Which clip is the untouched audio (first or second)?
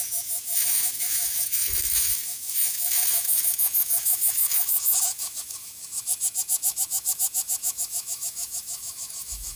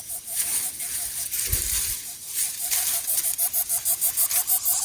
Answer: second